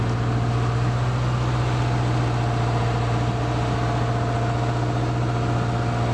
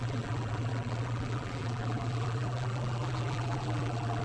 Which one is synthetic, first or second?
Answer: second